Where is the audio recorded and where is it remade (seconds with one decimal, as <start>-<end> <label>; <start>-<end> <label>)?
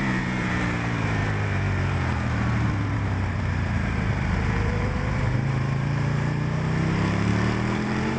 0.0-8.2 remade